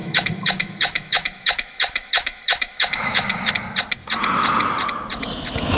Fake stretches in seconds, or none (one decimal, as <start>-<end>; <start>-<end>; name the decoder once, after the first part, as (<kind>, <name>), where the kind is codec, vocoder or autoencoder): 0.0-3.5 (autoencoder, DAC-VAE)